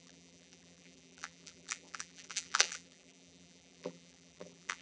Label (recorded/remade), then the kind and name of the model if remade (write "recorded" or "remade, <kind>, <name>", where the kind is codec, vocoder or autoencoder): remade, vocoder, BigVGAN v2